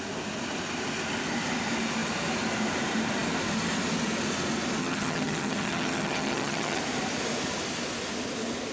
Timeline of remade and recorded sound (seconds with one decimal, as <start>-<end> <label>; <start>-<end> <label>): 0.0-4.8 recorded; 4.8-6.8 remade; 6.8-8.7 recorded